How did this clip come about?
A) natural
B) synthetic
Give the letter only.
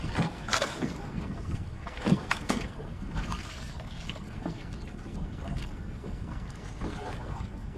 B